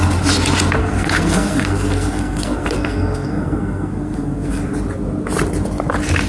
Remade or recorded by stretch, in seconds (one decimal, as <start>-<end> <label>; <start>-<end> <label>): 0.0-0.8 recorded; 0.8-4.6 remade; 4.6-6.3 recorded